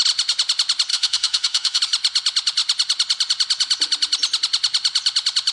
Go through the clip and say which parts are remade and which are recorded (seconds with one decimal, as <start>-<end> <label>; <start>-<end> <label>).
0.0-0.9 recorded; 0.9-1.8 remade; 1.8-5.5 recorded